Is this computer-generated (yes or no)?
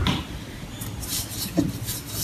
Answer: no